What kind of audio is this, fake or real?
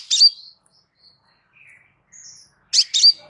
real